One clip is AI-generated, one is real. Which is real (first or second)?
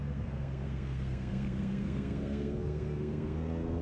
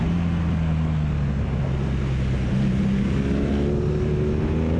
second